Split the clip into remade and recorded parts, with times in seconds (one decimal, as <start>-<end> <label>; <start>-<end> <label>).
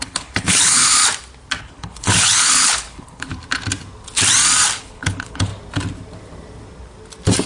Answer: 0.0-1.0 remade; 1.0-1.6 recorded; 1.6-3.3 remade; 3.3-4.8 recorded; 4.8-5.5 remade; 5.5-7.5 recorded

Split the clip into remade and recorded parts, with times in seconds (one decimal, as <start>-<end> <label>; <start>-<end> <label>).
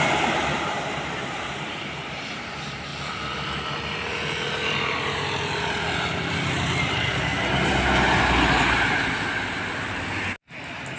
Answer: 0.0-2.9 remade; 2.9-6.8 recorded; 6.8-7.3 remade; 7.3-11.0 recorded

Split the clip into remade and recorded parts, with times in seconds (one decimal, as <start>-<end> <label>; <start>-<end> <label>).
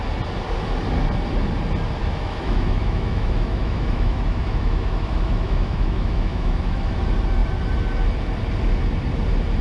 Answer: 0.0-2.0 recorded; 2.0-6.9 remade; 6.9-9.6 recorded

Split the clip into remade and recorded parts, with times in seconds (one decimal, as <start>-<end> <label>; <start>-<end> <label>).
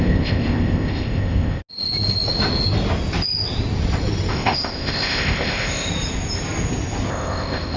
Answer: 0.0-1.6 remade; 1.6-4.3 recorded; 4.3-5.9 remade; 5.9-7.1 recorded; 7.1-7.8 remade